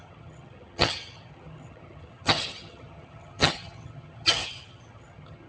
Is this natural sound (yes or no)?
no